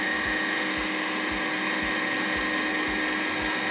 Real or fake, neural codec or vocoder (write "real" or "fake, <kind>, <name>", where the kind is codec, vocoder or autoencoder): real